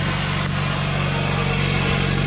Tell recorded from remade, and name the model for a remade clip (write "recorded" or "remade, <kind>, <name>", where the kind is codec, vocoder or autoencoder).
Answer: recorded